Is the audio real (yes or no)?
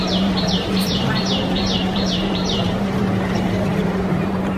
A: no